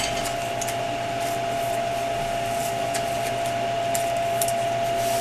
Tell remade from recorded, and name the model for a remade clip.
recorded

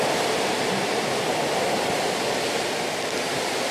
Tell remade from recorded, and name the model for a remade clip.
recorded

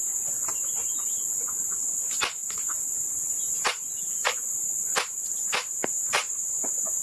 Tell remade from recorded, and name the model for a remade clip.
remade, vocoder, BigVGAN v2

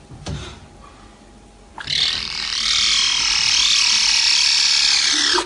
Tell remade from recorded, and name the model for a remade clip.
recorded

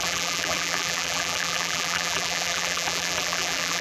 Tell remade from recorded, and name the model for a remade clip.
remade, vocoder, BigVGAN v2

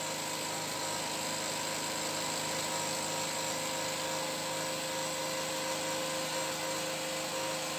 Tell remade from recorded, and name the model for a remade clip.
recorded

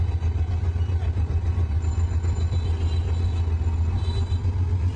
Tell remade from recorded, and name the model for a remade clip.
recorded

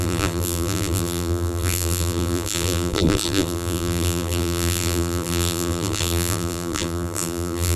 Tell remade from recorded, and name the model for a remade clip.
remade, vocoder, BigVGAN v2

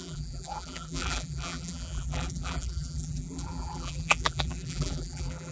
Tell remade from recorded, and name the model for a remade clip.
remade, vocoder, BigVGAN v2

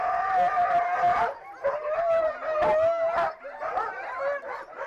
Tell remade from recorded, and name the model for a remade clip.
recorded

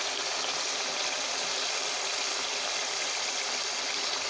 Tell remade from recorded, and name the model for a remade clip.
recorded